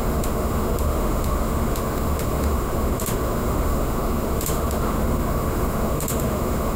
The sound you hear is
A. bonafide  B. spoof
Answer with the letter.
B